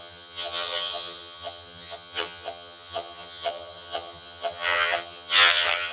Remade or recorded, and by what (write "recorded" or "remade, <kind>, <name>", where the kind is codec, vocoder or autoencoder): remade, vocoder, HiFi-GAN